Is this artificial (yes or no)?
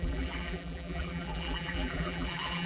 yes